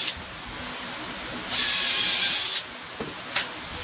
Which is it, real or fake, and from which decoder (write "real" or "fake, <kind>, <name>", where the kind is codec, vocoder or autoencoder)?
real